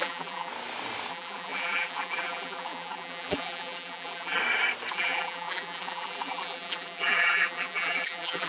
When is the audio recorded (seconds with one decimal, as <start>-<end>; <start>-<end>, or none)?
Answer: 0.5-1.1; 4.4-4.9